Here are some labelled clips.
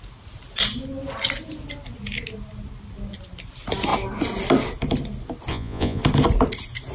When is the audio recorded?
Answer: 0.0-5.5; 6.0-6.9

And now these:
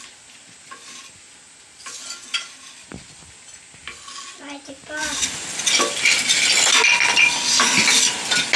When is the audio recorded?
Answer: 0.0-8.6